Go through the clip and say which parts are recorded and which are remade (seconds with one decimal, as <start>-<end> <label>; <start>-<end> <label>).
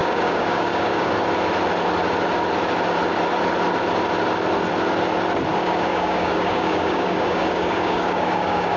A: 0.0-1.1 remade; 1.1-5.5 recorded; 5.5-8.8 remade